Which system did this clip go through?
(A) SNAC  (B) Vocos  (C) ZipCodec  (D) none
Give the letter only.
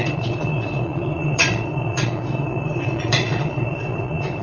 B